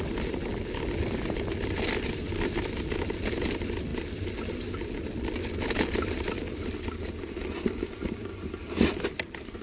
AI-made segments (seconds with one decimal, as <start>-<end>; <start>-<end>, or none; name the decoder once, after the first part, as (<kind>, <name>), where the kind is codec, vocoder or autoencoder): none